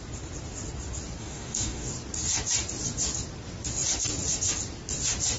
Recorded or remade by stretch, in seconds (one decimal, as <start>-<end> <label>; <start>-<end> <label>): 0.0-1.2 recorded; 1.2-1.9 remade; 1.9-5.4 recorded